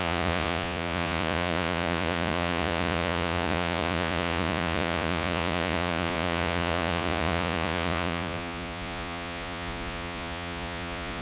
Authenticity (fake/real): fake